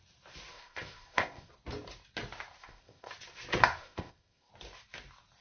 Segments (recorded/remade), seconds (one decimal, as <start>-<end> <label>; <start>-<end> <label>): 0.0-0.5 recorded; 0.5-1.5 remade; 1.5-2.6 recorded; 2.6-3.1 remade; 3.1-3.8 recorded; 3.8-4.5 remade; 4.5-5.4 recorded